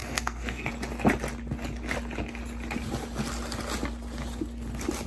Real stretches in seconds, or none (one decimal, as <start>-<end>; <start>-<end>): 0.7-5.1